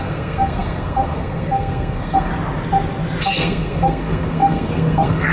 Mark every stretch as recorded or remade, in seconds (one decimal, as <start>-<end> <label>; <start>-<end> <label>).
0.0-2.3 remade; 2.3-3.2 recorded; 3.2-5.3 remade